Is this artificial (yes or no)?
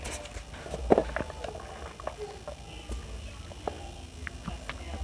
no